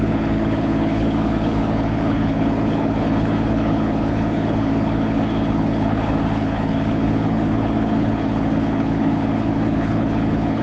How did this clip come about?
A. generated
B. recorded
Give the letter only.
A